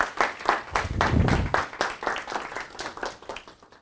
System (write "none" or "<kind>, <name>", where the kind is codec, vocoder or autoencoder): none